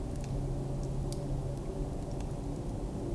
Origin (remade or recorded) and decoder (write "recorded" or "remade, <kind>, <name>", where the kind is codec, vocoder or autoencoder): recorded